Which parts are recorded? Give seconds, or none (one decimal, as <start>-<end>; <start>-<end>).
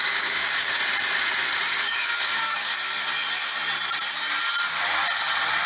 0.8-1.7; 2.7-5.7